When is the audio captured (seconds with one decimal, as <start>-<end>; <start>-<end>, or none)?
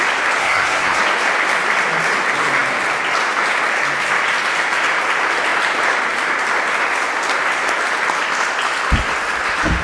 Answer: 0.0-0.4; 1.0-9.8